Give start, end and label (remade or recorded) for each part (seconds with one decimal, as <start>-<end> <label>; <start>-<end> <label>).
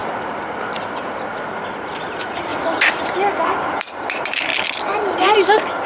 0.0-2.1 recorded; 2.1-2.5 remade; 2.5-3.8 recorded; 3.8-4.5 remade; 4.5-5.9 recorded